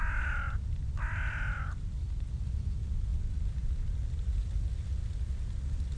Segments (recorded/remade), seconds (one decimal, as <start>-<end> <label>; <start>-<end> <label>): 0.0-6.0 recorded